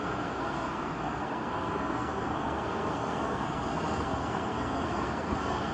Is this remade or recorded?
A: remade